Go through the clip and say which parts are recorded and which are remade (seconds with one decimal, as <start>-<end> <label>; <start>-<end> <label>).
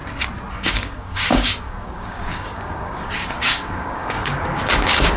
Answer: 0.0-0.5 recorded; 0.5-5.2 remade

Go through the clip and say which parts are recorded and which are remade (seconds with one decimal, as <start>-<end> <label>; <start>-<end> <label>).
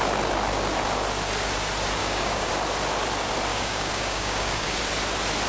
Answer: 0.0-2.0 recorded; 2.0-2.5 remade; 2.5-3.5 recorded; 3.5-4.8 remade; 4.8-5.5 recorded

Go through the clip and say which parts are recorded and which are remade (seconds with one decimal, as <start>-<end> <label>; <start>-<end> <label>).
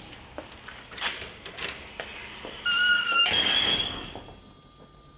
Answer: 0.0-2.9 recorded; 2.9-4.2 remade; 4.2-5.2 recorded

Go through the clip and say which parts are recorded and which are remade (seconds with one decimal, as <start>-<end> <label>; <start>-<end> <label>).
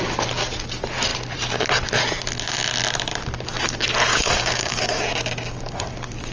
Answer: 0.0-4.1 recorded; 4.1-5.0 remade; 5.0-6.3 recorded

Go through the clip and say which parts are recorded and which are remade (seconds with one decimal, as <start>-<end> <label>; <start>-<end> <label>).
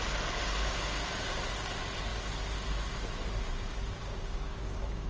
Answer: 0.0-4.0 recorded; 4.0-5.1 remade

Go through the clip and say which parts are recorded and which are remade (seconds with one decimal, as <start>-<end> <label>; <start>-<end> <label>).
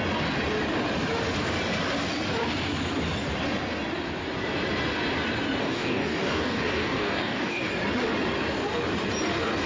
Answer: 0.0-5.6 recorded; 5.6-7.7 remade; 7.7-9.7 recorded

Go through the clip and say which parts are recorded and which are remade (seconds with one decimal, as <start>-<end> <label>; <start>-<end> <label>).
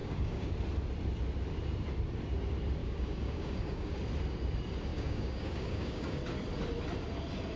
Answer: 0.0-0.5 remade; 0.5-2.8 recorded; 2.8-3.9 remade; 3.9-4.9 recorded; 4.9-6.2 remade; 6.2-7.6 recorded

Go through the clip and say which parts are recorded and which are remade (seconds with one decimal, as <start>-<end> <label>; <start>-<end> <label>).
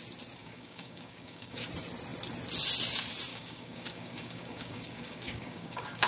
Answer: 0.0-0.4 recorded; 0.4-1.7 remade; 1.7-3.3 recorded; 3.3-6.1 remade